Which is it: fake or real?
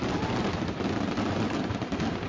real